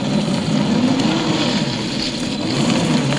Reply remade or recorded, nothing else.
recorded